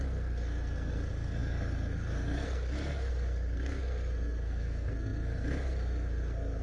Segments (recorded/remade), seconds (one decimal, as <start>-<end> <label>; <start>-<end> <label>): 0.0-6.6 remade